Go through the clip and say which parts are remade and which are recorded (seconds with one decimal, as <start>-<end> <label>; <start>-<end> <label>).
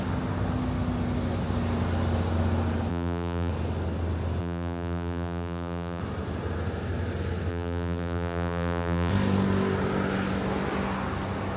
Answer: 0.0-2.9 recorded; 2.9-3.5 remade; 3.5-4.4 recorded; 4.4-6.0 remade; 6.0-7.5 recorded; 7.5-9.1 remade; 9.1-11.6 recorded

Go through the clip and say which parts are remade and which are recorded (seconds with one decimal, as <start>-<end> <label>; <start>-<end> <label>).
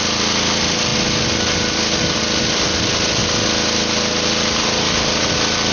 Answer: 0.0-0.9 remade; 0.9-2.4 recorded; 2.4-3.2 remade; 3.2-5.3 recorded; 5.3-5.7 remade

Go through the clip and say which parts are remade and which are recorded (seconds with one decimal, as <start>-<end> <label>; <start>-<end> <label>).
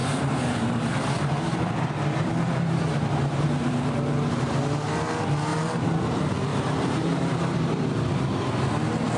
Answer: 0.0-4.1 remade; 4.1-5.5 recorded; 5.5-6.0 remade; 6.0-6.5 recorded; 6.5-7.7 remade; 7.7-9.2 recorded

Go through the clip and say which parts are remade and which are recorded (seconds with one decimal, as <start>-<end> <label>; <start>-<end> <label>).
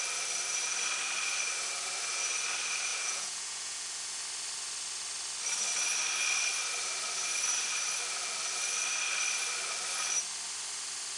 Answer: 0.0-2.9 recorded; 2.9-4.2 remade; 4.2-11.2 recorded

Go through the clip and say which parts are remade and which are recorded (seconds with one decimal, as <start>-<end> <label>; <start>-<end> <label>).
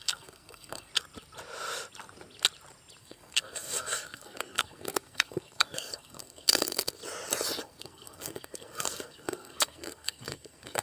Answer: 0.0-0.9 remade; 0.9-3.0 recorded; 3.0-7.0 remade; 7.0-7.6 recorded; 7.6-10.8 remade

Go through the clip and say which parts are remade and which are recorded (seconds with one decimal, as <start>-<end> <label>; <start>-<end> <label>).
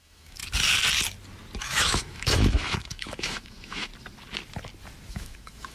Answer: 0.0-0.4 remade; 0.4-1.6 recorded; 1.6-3.9 remade; 3.9-5.1 recorded; 5.1-5.7 remade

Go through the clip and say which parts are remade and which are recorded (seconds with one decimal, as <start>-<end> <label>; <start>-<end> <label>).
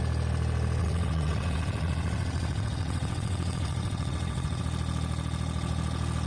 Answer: 0.0-0.8 recorded; 0.8-4.6 remade; 4.6-6.3 recorded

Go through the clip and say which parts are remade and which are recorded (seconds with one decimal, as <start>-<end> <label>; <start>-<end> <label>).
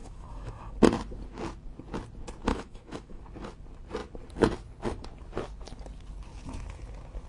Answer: 0.0-0.7 remade; 0.7-2.5 recorded; 2.5-3.2 remade; 3.2-7.3 recorded